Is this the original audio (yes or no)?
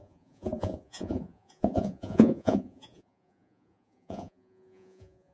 no